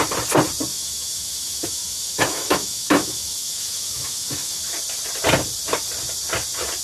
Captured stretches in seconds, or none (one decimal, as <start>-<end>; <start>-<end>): 0.0-0.7; 4.7-6.8